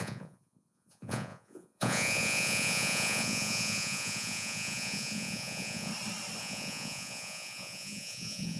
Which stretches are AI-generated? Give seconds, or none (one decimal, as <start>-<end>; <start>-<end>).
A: 0.0-5.9; 6.4-8.6